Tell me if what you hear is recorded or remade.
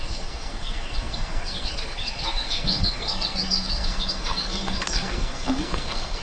remade